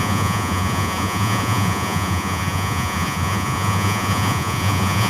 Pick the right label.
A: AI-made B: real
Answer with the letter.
A